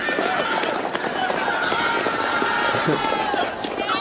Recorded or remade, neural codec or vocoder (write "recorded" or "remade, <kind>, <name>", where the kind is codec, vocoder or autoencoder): recorded